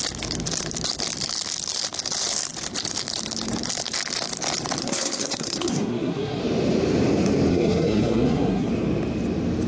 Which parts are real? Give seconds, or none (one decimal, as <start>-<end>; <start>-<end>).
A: 0.0-4.8; 6.4-7.5; 8.7-9.7

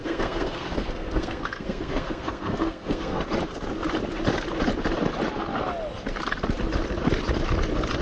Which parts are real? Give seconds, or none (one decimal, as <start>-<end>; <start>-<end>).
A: 3.2-8.0

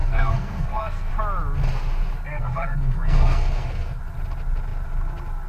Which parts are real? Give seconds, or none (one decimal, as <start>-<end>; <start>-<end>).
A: 1.1-2.3; 4.0-5.5

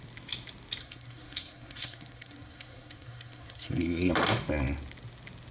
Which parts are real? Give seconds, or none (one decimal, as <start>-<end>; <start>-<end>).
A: 0.0-0.8; 4.1-5.5

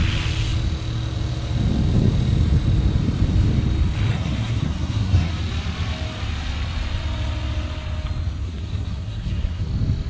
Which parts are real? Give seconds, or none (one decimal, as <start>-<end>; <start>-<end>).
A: 0.0-4.1; 5.3-8.4; 9.6-10.1